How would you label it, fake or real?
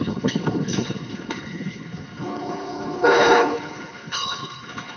fake